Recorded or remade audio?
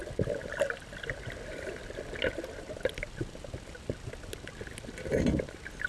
recorded